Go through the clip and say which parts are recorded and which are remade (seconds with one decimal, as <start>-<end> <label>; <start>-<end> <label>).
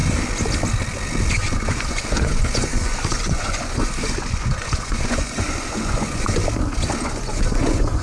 0.0-1.3 recorded; 1.3-6.4 remade; 6.4-7.0 recorded; 7.0-8.0 remade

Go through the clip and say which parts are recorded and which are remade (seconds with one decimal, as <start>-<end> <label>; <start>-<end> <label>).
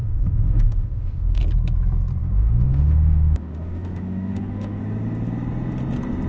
0.0-1.4 remade; 1.4-2.2 recorded; 2.2-4.8 remade; 4.8-6.3 recorded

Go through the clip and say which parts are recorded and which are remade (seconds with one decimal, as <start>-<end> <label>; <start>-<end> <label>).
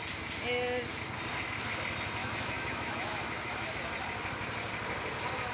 0.0-2.2 recorded; 2.2-3.7 remade; 3.7-5.5 recorded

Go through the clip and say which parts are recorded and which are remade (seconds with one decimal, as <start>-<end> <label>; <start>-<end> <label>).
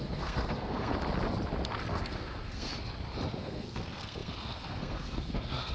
0.0-0.9 remade; 0.9-1.9 recorded; 1.9-2.7 remade; 2.7-3.4 recorded; 3.4-5.7 remade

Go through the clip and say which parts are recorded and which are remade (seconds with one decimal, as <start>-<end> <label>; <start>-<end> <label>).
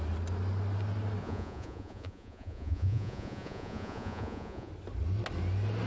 0.0-1.2 recorded; 1.2-4.7 remade; 4.7-5.9 recorded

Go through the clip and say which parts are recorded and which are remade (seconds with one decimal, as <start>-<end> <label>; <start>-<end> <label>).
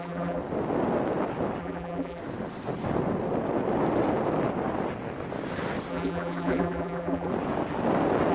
0.0-0.4 remade; 0.4-1.6 recorded; 1.6-2.2 remade; 2.2-5.9 recorded; 5.9-7.3 remade; 7.3-8.3 recorded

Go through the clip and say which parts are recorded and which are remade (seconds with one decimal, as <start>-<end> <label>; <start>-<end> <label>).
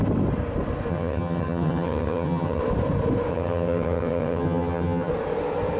0.0-0.9 recorded; 0.9-2.6 remade; 2.6-3.3 recorded; 3.3-5.1 remade; 5.1-5.8 recorded